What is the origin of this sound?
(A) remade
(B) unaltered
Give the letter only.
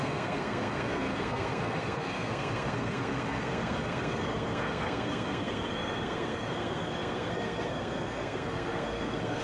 A